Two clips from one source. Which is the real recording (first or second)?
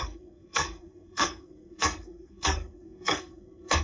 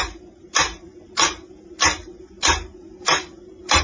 second